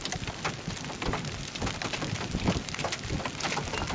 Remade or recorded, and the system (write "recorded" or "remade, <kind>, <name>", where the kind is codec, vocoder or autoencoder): recorded